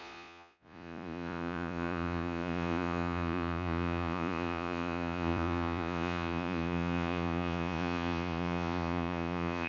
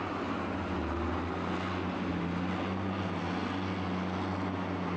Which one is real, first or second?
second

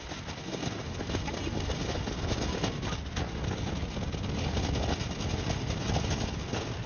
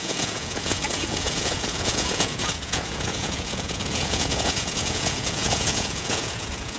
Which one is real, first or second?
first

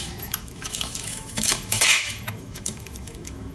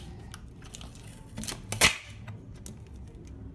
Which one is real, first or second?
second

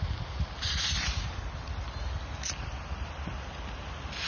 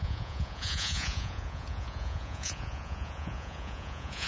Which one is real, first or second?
first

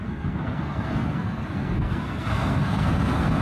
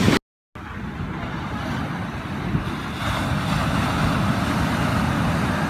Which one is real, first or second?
second